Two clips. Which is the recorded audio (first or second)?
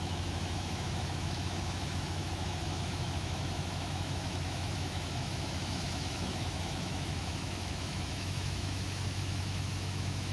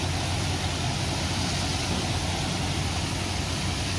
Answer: second